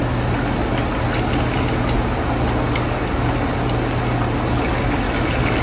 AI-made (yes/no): no